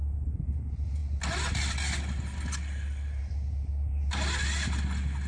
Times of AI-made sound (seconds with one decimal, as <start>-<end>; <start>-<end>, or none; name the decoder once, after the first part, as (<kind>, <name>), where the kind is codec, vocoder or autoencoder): none